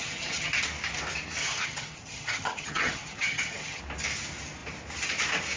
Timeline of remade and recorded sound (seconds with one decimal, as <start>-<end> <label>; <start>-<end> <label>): 0.0-0.6 remade; 0.6-1.4 recorded; 1.4-3.8 remade; 3.8-5.6 recorded